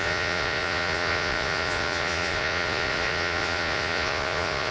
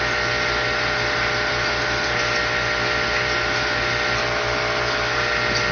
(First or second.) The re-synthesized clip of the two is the first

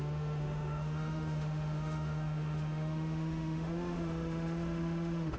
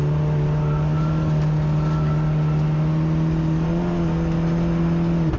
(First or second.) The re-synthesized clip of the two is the first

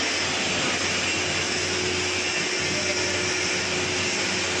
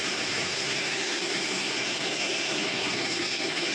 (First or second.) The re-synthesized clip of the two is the second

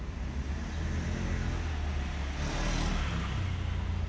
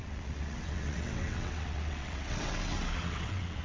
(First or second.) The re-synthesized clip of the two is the second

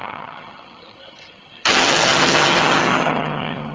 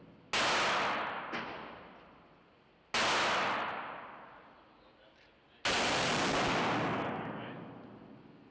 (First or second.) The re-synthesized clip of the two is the first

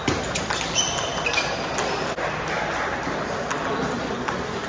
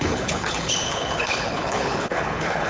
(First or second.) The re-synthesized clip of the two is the second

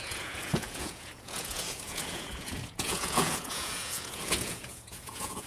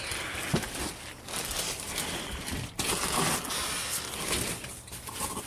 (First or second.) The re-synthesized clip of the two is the first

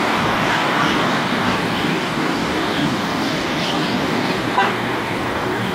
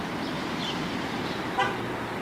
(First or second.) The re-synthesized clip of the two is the first